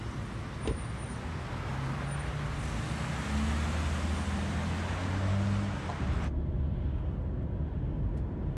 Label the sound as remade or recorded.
recorded